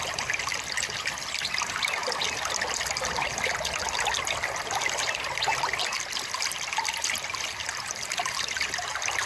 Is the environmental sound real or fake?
real